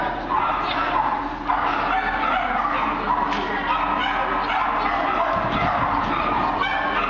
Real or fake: real